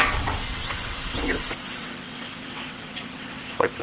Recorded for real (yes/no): no